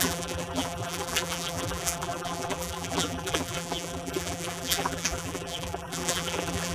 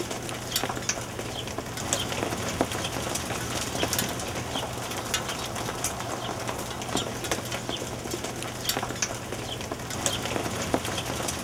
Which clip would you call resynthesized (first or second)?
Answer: first